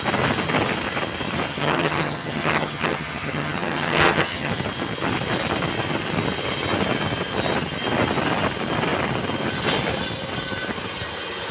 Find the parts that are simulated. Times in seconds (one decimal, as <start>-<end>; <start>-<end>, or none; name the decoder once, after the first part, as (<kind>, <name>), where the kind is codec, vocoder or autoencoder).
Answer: 1.5-4.5 (vocoder, HiFi-GAN)